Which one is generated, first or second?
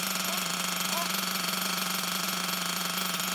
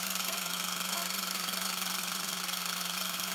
second